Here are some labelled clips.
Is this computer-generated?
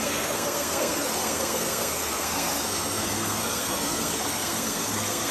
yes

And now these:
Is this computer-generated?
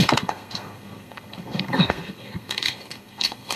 yes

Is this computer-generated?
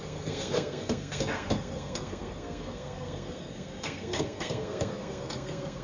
yes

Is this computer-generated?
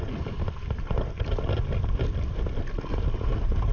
no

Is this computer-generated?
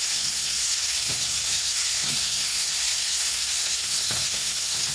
yes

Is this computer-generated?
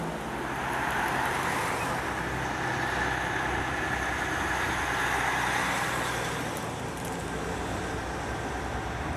no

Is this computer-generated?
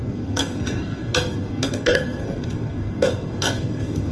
yes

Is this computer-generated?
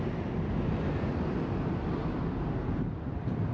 no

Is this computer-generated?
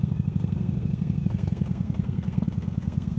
yes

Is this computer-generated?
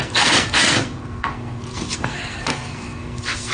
yes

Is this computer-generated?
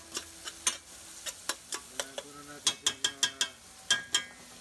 no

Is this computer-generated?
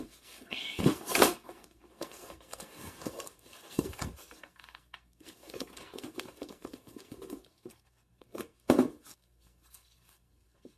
yes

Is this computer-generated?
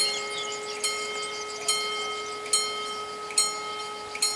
no